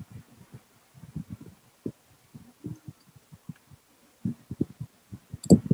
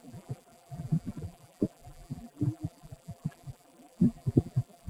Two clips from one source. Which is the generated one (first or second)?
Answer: second